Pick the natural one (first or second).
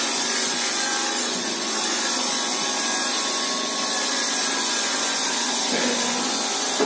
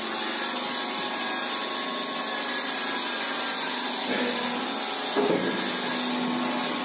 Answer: second